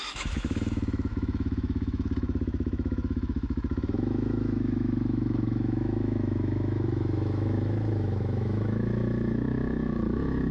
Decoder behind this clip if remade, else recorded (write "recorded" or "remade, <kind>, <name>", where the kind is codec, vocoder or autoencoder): remade, autoencoder, DAC-VAE